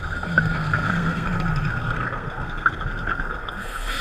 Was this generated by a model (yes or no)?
yes